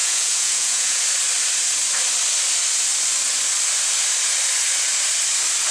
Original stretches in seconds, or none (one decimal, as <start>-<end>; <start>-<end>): 1.0-5.7